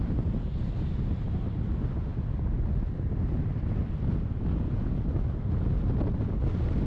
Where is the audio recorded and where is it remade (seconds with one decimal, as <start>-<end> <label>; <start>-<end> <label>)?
0.0-6.9 recorded